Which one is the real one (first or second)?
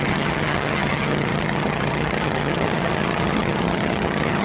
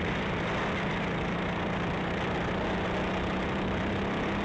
second